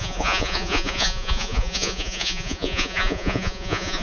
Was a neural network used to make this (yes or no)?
yes